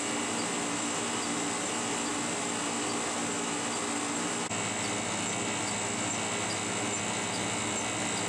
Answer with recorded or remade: recorded